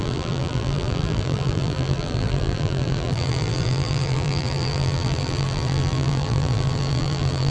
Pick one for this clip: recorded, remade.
remade